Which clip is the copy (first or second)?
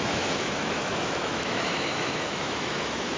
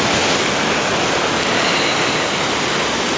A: first